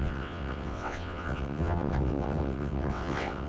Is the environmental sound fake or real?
fake